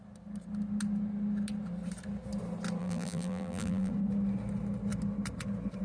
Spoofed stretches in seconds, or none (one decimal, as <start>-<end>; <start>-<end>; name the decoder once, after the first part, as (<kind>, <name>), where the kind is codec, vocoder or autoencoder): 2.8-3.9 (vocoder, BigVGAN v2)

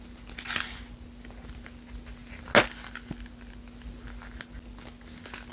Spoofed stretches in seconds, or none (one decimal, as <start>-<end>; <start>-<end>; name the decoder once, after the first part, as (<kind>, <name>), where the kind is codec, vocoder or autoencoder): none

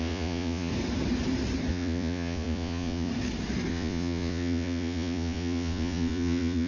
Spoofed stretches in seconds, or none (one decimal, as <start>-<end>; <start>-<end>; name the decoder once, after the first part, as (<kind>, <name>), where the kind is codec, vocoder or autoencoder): 0.0-0.7 (vocoder, Vocos); 1.7-3.1; 3.7-6.7

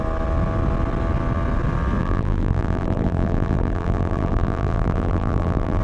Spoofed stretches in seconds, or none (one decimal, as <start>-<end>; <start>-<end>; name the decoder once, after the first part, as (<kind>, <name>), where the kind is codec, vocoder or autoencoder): 2.0-5.8 (vocoder, BigVGAN v2)